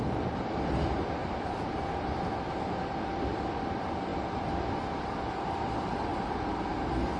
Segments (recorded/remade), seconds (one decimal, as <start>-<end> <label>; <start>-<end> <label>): 0.0-1.2 recorded; 1.2-2.3 remade; 2.3-6.1 recorded; 6.1-7.2 remade